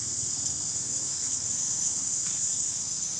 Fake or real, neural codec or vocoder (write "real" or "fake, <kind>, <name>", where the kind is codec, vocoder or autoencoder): fake, codec, SNAC